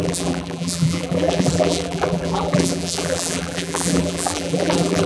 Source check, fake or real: fake